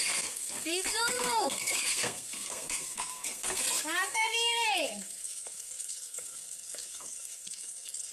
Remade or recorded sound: remade